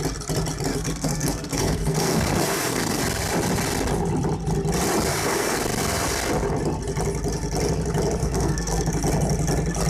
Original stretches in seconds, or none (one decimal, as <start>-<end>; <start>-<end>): 0.0-0.7; 3.0-5.1; 5.6-8.2; 8.9-9.9